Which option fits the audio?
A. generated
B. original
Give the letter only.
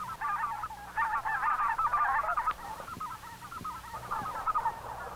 B